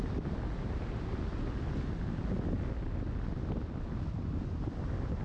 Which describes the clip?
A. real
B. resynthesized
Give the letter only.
A